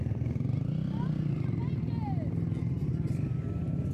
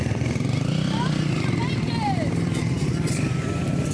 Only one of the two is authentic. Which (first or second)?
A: first